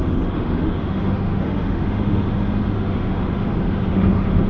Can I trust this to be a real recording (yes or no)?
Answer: no